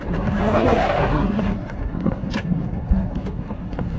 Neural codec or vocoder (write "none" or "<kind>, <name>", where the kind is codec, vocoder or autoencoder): codec, SNAC